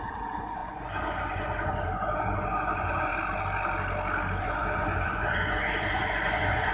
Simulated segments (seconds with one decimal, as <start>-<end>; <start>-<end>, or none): 0.0-3.1; 4.4-6.7

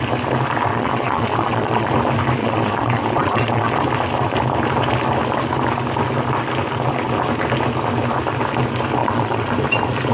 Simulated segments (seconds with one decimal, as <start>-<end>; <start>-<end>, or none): 0.7-1.9; 2.4-3.7; 9.0-9.5

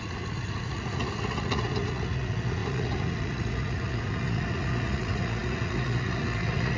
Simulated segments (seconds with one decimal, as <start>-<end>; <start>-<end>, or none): 0.0-6.8

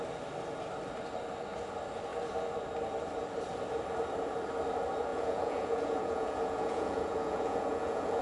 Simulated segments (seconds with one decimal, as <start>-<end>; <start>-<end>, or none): 5.1-8.2

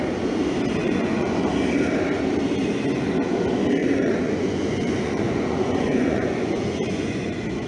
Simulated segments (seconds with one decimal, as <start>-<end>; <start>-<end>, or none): 0.8-1.5; 3.8-7.7

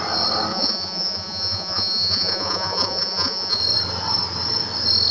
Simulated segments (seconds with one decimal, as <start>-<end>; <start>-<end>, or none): 0.5-3.6

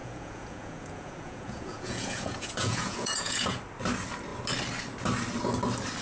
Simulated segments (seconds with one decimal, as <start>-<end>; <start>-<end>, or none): 0.0-3.6